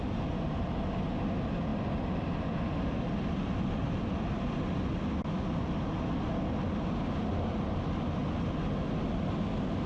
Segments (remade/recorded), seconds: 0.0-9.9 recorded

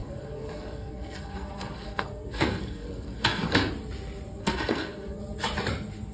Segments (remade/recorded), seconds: 0.0-3.7 remade; 3.7-4.4 recorded; 4.4-5.2 remade; 5.2-6.1 recorded